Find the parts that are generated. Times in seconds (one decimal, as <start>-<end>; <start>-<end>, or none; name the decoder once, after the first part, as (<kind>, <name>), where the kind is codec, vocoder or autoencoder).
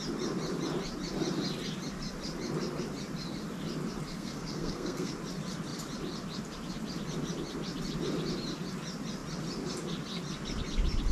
4.1-5.1 (codec, SNAC)